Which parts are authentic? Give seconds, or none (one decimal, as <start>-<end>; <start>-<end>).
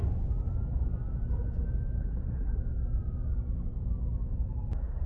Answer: 0.0-2.0; 2.6-5.1